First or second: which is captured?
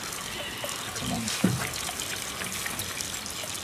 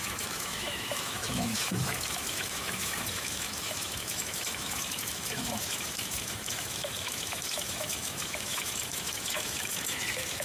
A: first